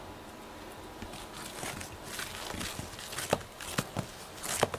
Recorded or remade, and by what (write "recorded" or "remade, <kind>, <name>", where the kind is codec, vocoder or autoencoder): recorded